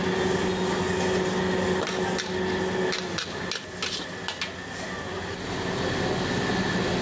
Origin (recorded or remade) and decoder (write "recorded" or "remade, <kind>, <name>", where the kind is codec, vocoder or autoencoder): recorded